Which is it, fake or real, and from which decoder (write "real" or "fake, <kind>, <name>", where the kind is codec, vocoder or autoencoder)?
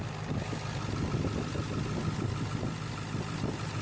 real